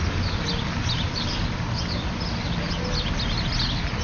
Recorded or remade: recorded